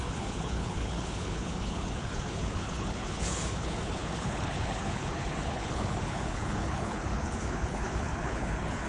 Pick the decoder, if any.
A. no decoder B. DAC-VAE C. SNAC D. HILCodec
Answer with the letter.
D